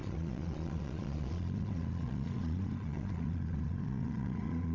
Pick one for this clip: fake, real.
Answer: fake